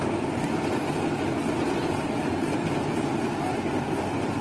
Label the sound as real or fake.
real